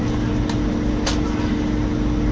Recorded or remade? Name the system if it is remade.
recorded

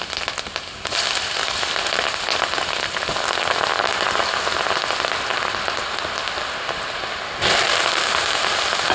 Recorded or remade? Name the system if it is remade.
recorded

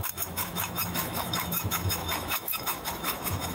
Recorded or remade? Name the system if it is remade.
remade, autoencoder, DAC-VAE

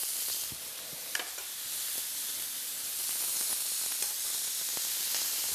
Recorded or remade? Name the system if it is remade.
recorded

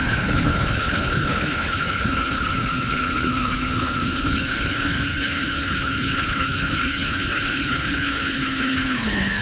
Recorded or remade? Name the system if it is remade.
remade, codec, HILCodec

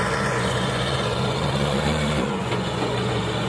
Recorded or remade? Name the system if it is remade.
remade, vocoder, Vocos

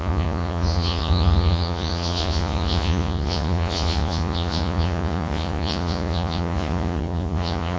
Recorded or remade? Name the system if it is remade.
remade, vocoder, Vocos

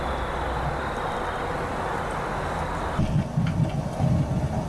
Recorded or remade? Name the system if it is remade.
recorded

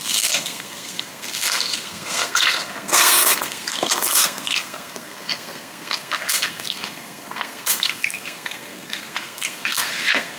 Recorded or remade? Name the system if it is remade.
remade, codec, SNAC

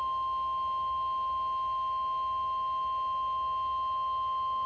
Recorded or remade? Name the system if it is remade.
recorded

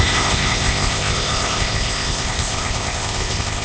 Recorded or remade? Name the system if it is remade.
remade, codec, ZipCodec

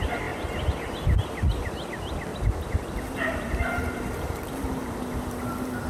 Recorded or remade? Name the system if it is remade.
recorded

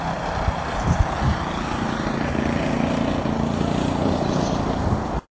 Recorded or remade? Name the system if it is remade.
remade, vocoder, BigVGAN v2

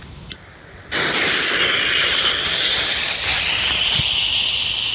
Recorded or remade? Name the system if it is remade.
recorded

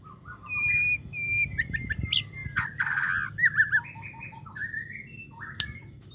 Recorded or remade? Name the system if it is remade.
recorded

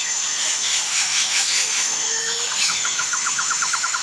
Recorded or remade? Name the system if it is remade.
remade, autoencoder, DAC-VAE